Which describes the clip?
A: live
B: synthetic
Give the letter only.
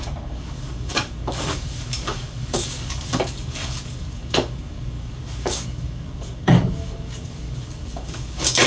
B